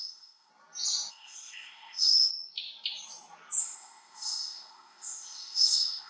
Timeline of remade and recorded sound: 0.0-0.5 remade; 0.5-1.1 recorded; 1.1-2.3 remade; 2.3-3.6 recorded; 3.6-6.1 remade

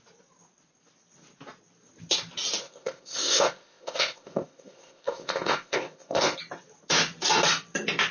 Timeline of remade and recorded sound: 0.0-2.6 recorded; 2.6-6.4 remade; 6.4-8.1 recorded

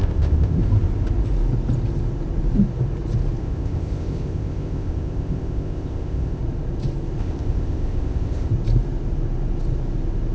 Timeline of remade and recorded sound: 0.0-0.6 remade; 0.6-3.4 recorded; 3.4-6.4 remade; 6.4-7.2 recorded; 7.2-8.5 remade; 8.5-10.3 recorded

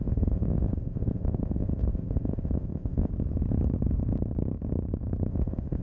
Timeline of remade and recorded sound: 0.0-3.1 remade; 3.1-5.3 recorded; 5.3-5.8 remade

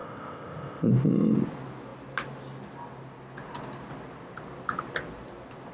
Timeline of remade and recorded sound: 0.0-0.9 remade; 0.9-5.7 recorded